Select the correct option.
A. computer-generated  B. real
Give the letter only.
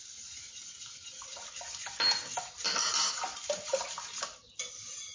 B